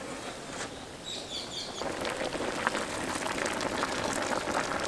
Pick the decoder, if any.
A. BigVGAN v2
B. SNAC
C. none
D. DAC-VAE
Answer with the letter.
C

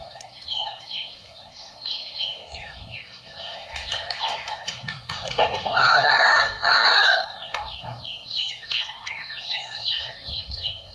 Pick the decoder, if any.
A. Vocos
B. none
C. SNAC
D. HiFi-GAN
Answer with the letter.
C